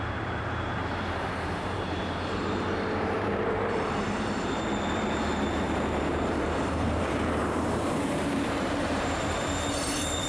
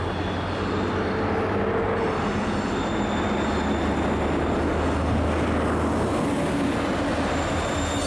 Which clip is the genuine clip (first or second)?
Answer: second